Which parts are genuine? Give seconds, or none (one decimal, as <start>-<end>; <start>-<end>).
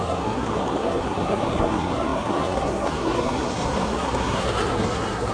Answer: none